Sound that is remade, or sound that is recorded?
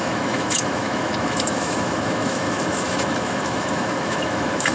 remade